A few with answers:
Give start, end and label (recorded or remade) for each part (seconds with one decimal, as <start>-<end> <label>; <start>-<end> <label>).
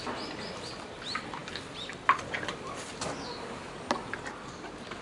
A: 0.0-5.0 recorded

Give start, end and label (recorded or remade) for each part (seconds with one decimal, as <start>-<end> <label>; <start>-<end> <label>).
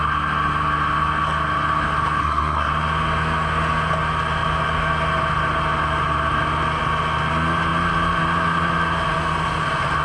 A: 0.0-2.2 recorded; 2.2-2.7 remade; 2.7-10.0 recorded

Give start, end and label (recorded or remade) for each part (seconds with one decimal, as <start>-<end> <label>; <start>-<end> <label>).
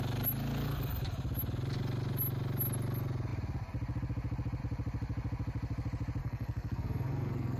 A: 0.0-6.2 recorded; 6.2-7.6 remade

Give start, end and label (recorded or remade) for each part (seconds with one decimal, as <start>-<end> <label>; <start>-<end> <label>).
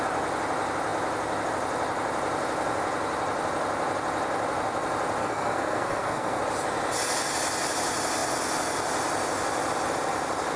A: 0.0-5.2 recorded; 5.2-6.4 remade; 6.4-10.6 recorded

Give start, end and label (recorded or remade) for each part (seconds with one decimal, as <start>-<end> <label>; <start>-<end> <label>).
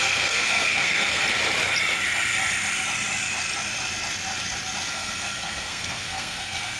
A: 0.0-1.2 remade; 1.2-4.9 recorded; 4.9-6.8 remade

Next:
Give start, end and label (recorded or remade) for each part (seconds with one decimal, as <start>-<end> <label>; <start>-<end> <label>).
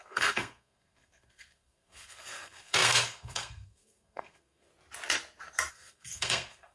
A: 0.0-4.7 remade; 4.7-5.7 recorded; 5.7-6.7 remade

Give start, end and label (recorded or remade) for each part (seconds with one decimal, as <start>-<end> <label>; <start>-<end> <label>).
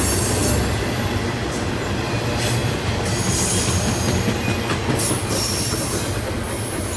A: 0.0-7.0 recorded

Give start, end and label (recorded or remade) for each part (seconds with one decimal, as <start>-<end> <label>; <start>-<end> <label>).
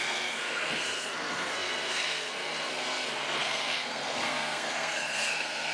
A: 0.0-5.7 remade